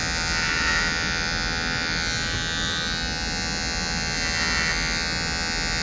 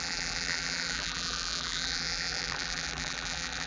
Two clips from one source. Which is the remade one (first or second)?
second